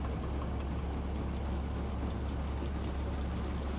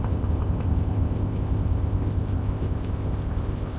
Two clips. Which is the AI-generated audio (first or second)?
second